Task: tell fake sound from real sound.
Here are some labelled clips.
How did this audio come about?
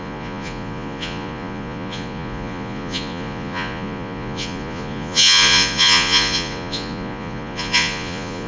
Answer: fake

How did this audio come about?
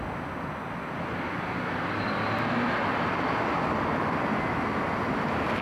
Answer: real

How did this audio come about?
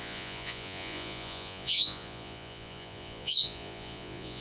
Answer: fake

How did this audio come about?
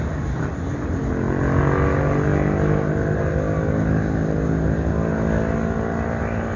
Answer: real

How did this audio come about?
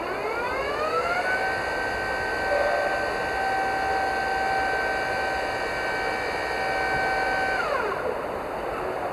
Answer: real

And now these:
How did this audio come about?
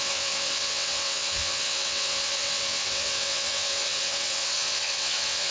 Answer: fake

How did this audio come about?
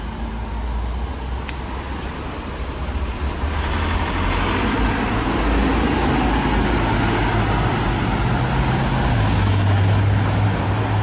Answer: real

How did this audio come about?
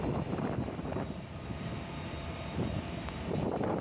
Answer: fake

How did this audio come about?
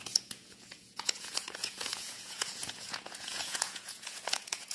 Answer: fake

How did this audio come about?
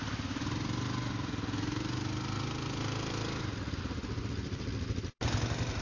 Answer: real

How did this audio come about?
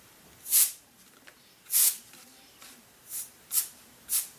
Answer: fake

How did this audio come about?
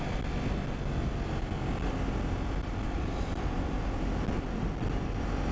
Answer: real